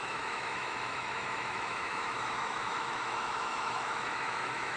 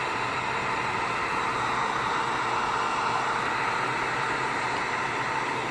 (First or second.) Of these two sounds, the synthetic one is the first